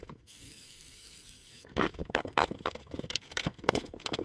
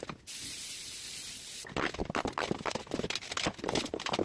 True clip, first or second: second